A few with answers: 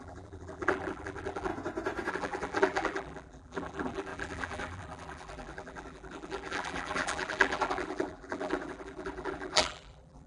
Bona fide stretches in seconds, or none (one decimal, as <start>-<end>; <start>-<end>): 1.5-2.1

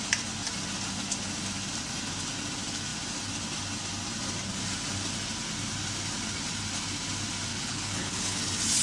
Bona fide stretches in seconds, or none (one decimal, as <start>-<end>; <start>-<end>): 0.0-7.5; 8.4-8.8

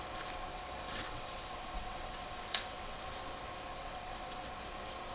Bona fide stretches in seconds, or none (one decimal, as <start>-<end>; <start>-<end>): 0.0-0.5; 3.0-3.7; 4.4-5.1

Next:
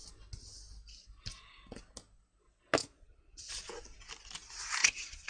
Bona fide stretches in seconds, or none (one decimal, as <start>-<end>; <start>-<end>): 0.0-2.8; 3.5-4.8

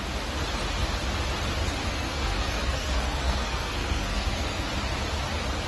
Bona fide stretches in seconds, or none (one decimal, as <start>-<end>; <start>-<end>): 0.0-1.9; 4.7-5.7

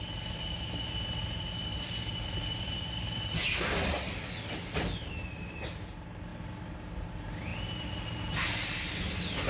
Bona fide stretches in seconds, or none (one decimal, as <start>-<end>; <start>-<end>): 0.0-1.7; 3.3-9.5

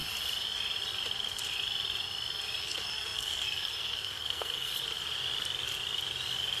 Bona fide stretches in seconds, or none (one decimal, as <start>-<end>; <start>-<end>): 0.0-2.6; 4.7-6.6